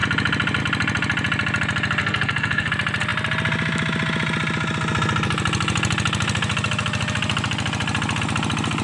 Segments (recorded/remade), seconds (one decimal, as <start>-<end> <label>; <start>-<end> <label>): 0.0-2.0 recorded; 2.0-2.7 remade; 2.7-8.8 recorded